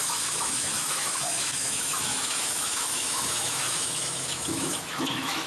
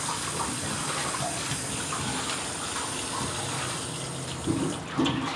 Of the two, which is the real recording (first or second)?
second